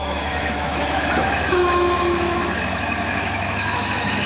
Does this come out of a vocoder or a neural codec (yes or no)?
yes